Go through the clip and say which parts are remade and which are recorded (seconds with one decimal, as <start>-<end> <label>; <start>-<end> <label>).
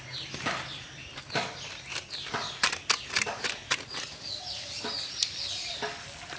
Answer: 0.0-6.4 recorded